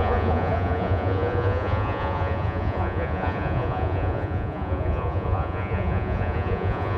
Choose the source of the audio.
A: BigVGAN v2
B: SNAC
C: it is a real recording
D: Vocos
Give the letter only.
D